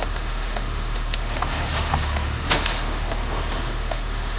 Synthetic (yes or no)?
yes